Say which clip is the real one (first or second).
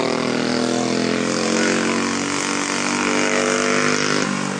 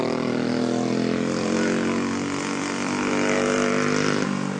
first